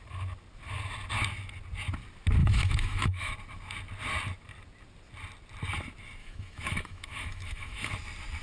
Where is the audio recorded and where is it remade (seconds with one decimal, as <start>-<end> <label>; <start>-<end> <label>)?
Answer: 0.0-2.4 recorded; 2.4-3.3 remade; 3.3-6.2 recorded; 6.2-7.9 remade; 7.9-8.4 recorded